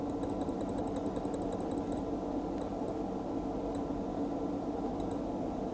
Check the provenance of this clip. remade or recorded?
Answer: recorded